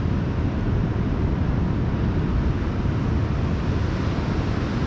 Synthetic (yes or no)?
no